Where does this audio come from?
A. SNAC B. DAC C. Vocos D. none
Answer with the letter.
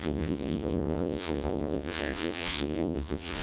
C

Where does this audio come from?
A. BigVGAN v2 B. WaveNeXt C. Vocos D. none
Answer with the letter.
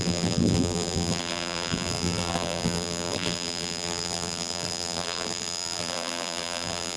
A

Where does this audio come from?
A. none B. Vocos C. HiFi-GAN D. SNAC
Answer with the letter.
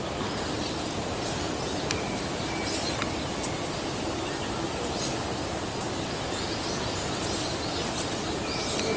A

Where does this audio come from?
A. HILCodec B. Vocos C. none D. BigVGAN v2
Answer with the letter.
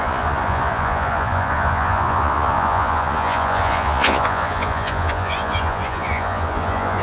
B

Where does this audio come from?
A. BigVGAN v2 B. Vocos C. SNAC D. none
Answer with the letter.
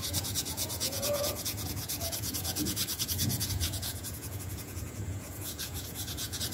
B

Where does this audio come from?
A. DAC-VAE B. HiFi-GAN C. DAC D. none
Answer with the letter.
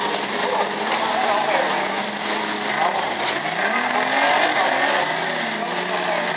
D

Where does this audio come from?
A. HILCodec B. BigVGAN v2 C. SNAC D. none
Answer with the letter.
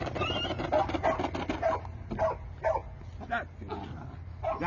D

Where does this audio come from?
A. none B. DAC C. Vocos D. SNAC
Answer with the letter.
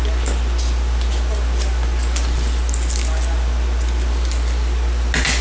A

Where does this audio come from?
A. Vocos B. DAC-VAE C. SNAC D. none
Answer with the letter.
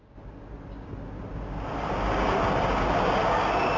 D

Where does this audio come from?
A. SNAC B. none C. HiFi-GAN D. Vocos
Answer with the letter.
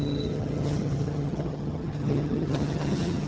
C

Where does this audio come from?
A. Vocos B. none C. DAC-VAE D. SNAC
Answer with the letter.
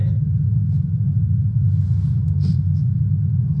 B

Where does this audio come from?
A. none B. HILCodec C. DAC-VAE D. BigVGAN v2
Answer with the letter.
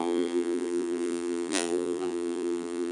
D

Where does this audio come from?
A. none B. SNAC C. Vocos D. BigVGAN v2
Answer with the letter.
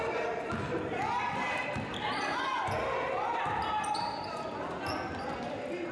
D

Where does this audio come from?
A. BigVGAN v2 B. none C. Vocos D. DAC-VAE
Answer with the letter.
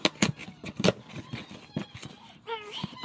B